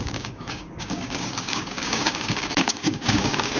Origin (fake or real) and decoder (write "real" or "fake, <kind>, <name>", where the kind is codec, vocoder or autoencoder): fake, codec, DAC